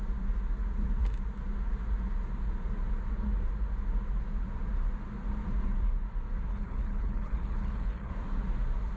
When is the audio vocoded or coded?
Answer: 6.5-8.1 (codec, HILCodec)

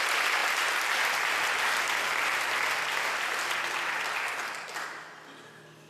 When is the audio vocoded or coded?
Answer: none